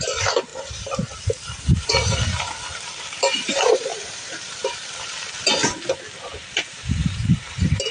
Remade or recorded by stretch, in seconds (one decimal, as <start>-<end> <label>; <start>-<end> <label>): 0.0-5.6 remade; 5.6-6.7 recorded; 6.7-7.9 remade

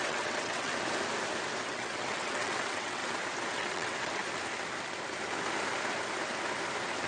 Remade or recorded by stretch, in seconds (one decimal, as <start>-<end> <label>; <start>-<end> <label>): 0.0-0.7 remade; 0.7-1.6 recorded; 1.6-3.0 remade; 3.0-3.5 recorded; 3.5-4.2 remade; 4.2-7.1 recorded

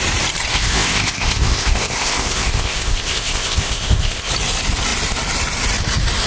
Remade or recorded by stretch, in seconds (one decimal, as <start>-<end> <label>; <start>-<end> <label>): 0.0-0.5 recorded; 0.5-4.3 remade; 4.3-6.3 recorded

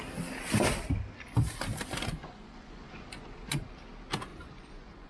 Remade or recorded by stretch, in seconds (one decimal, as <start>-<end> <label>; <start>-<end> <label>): 0.0-2.2 recorded; 2.2-3.7 remade; 3.7-4.3 recorded; 4.3-5.1 remade

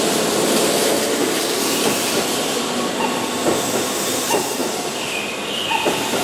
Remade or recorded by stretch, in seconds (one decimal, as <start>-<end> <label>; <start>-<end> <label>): 0.0-6.2 recorded

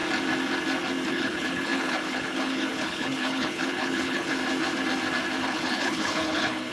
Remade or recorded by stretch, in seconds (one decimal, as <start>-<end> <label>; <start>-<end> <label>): 0.0-1.1 recorded; 1.1-4.4 remade; 4.4-5.4 recorded; 5.4-6.7 remade